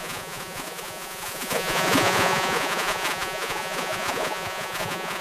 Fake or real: fake